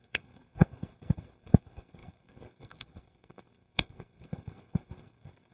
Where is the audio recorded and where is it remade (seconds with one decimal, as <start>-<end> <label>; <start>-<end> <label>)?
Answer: 0.0-5.5 remade

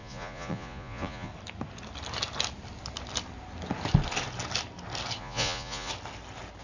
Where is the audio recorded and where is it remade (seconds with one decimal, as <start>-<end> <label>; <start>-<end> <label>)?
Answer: 0.0-1.3 remade; 1.3-5.2 recorded; 5.2-5.9 remade; 5.9-6.6 recorded

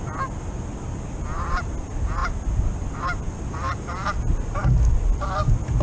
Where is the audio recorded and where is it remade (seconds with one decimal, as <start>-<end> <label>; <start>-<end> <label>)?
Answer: 0.0-5.8 recorded